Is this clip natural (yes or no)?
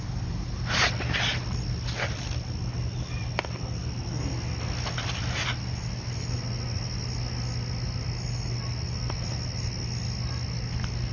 yes